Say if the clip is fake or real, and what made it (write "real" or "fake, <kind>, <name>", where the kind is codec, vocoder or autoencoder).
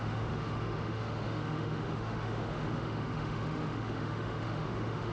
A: fake, autoencoder, DAC-VAE